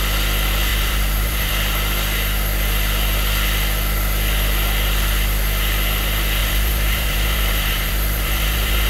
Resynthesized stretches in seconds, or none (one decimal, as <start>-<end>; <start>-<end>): 0.7-1.5; 6.4-8.9